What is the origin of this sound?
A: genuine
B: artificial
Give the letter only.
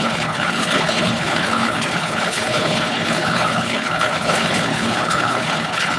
B